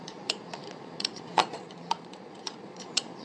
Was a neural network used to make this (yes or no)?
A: yes